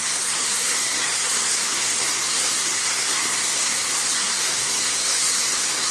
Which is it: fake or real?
fake